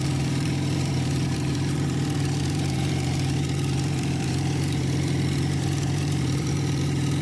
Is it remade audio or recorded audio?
remade